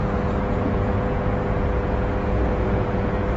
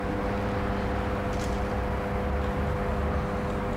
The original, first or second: second